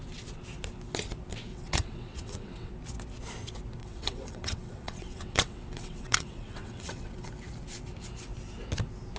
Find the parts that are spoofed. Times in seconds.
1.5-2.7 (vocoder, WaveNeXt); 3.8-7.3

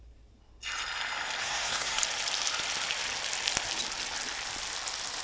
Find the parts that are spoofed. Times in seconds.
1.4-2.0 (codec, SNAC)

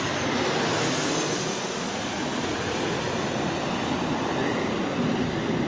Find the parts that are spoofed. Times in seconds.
none

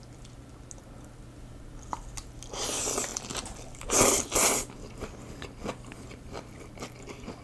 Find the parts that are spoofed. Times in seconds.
none

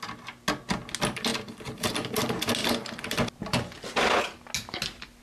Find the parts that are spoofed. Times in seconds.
none

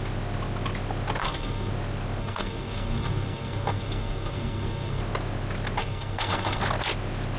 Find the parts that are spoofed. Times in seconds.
1.2-1.7 (codec, SNAC); 2.2-5.0; 5.8-6.6

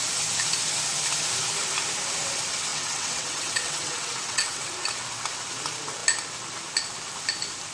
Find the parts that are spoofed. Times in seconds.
2.7-4.7 (vocoder, WaveNeXt)

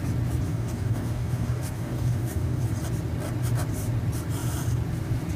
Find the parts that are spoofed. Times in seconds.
0.5-2.6 (codec, DAC)